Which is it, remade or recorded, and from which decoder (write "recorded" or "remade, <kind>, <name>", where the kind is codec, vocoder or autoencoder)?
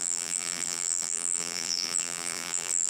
remade, vocoder, BigVGAN v2